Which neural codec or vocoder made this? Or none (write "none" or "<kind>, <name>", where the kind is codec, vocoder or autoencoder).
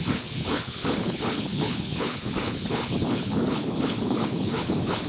codec, HILCodec